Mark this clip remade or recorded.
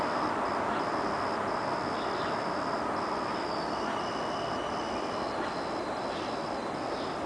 recorded